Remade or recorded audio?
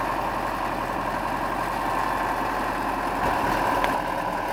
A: recorded